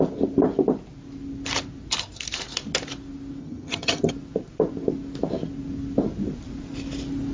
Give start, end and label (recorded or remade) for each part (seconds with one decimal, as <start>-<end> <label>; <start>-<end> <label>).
0.0-3.4 recorded; 3.4-4.1 remade; 4.1-7.3 recorded